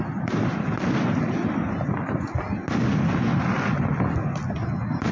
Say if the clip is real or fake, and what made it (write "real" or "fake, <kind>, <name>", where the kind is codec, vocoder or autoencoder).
real